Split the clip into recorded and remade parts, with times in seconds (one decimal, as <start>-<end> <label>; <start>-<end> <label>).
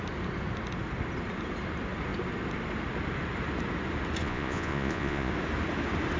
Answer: 0.0-4.2 recorded; 4.2-5.3 remade; 5.3-6.2 recorded